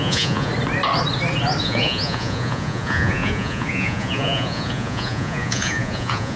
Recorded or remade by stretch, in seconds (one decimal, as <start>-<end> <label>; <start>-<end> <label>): 0.0-0.5 remade; 0.5-1.6 recorded; 1.6-6.4 remade